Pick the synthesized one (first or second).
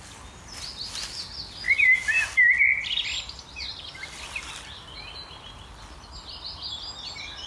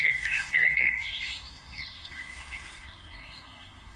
second